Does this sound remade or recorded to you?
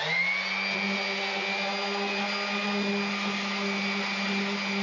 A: recorded